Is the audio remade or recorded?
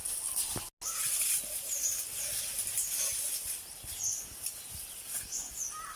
recorded